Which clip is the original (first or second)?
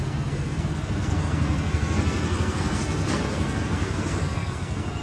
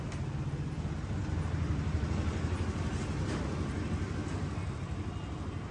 second